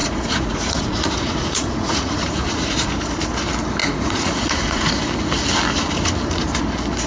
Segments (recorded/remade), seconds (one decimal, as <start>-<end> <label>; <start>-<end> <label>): 0.0-2.9 remade; 2.9-3.8 recorded; 3.8-4.9 remade; 4.9-7.1 recorded